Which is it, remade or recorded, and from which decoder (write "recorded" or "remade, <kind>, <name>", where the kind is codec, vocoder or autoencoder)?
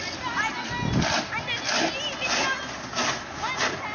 recorded